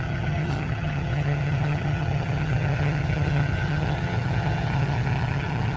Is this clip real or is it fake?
fake